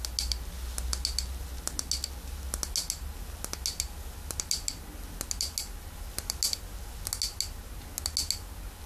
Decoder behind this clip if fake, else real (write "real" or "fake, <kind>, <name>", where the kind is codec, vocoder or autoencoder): real